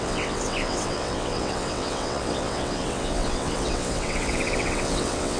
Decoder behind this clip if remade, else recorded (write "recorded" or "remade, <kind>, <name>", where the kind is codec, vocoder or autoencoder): remade, vocoder, WaveNeXt